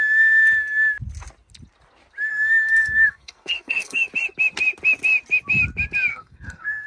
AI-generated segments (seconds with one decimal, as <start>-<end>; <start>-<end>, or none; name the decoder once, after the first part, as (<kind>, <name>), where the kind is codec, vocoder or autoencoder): 2.3-4.1 (codec, SNAC); 6.1-6.9